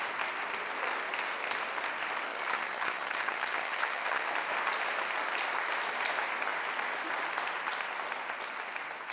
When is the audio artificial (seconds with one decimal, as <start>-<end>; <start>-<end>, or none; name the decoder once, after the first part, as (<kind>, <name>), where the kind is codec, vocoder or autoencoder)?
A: 2.3-4.3 (vocoder, HiFi-GAN)